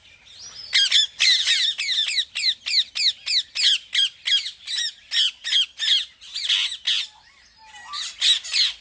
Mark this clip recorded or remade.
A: recorded